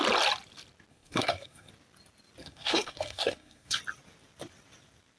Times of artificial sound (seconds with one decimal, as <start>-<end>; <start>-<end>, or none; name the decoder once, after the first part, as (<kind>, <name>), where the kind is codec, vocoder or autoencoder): 0.9-1.7 (codec, SNAC); 2.4-3.8